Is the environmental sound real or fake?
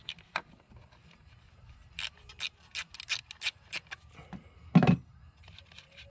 real